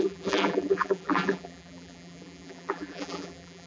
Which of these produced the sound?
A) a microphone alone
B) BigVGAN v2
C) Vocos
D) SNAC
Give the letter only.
B